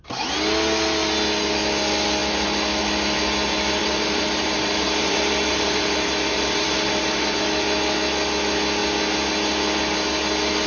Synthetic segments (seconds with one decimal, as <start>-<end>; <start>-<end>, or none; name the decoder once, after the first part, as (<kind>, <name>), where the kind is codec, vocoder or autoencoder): 3.8-7.5 (vocoder, BigVGAN v2)